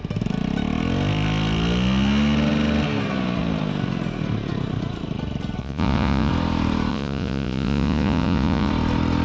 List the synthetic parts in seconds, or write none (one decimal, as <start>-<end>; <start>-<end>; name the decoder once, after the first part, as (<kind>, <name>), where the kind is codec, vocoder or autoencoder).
5.6-6.3 (vocoder, Vocos); 6.9-8.7